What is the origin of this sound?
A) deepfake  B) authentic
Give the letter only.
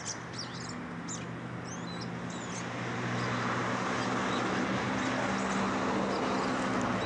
B